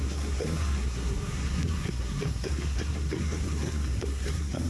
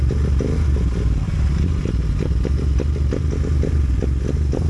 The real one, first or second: second